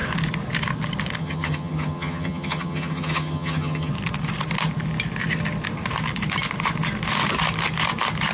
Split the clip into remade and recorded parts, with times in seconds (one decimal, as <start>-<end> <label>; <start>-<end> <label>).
0.0-1.2 recorded; 1.2-3.9 remade; 3.9-8.3 recorded